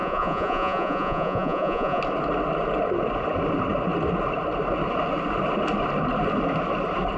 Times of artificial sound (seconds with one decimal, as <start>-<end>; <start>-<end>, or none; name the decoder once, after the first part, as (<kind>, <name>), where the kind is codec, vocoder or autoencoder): 0.0-2.0 (vocoder, Vocos)